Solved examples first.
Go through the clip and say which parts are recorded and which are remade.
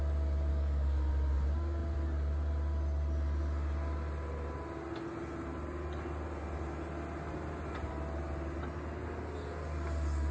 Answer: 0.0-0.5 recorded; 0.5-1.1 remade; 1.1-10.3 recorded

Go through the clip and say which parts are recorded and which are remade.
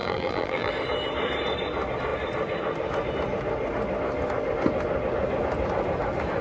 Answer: 0.0-0.7 remade; 0.7-6.4 recorded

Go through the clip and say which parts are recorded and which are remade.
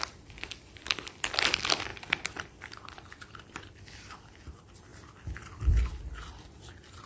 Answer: 0.0-4.9 remade; 4.9-5.6 recorded; 5.6-7.1 remade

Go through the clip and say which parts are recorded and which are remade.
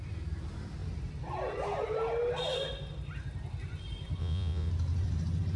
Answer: 0.0-4.2 recorded; 4.2-4.7 remade; 4.7-5.6 recorded